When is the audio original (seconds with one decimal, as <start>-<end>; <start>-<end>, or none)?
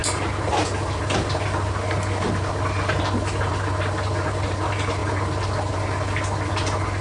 0.0-7.0